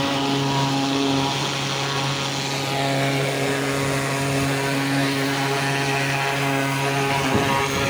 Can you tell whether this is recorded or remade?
recorded